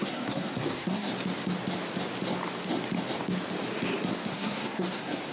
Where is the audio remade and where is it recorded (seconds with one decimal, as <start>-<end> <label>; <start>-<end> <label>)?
0.0-1.1 remade; 1.1-4.3 recorded; 4.3-5.3 remade